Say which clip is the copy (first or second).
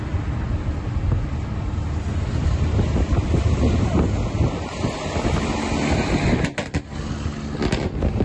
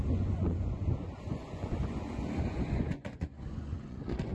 second